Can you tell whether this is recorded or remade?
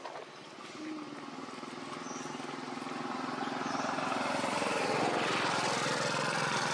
recorded